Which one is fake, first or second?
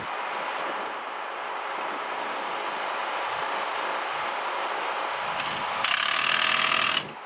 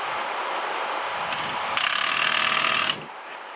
second